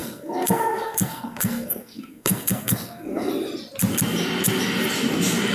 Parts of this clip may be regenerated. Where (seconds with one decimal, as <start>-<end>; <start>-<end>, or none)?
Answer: 0.0-3.3